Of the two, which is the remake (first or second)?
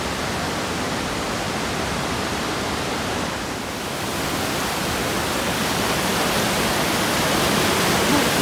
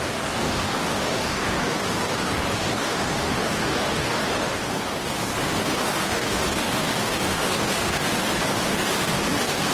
second